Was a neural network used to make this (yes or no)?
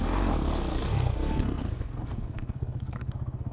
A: yes